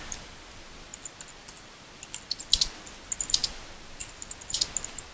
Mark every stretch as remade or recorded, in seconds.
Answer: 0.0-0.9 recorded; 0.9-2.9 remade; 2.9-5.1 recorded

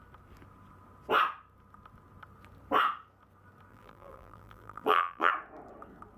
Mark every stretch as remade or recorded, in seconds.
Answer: 0.0-3.7 recorded; 3.7-5.3 remade; 5.3-6.2 recorded

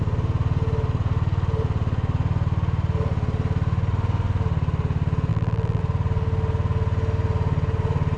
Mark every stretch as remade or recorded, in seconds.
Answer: 0.0-5.3 recorded; 5.3-5.8 remade; 5.8-8.2 recorded

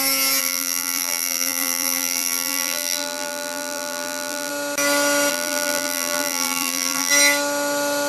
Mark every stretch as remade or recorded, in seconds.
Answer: 0.0-0.4 recorded; 0.4-4.5 remade; 4.5-5.3 recorded; 5.3-7.1 remade; 7.1-8.1 recorded

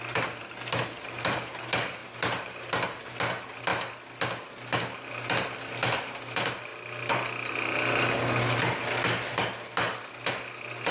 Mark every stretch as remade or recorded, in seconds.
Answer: 0.0-2.0 recorded; 2.0-3.0 remade; 3.0-10.9 recorded

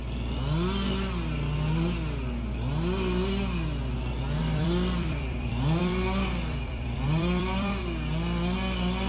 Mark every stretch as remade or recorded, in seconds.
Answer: 0.0-4.4 recorded; 4.4-7.8 remade; 7.8-9.1 recorded

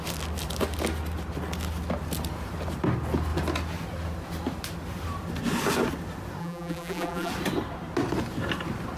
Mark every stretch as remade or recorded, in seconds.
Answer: 0.0-6.4 recorded; 6.4-7.3 remade; 7.3-9.0 recorded

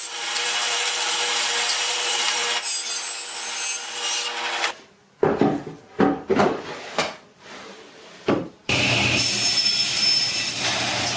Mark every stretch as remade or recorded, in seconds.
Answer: 0.0-2.4 remade; 2.4-7.0 recorded; 7.0-11.2 remade